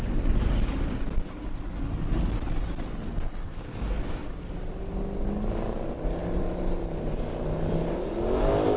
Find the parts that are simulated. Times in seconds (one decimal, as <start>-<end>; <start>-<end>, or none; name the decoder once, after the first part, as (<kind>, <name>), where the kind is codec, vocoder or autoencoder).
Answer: 3.4-4.2 (codec, SNAC)